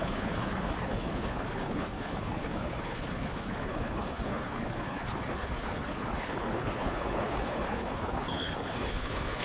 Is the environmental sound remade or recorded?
remade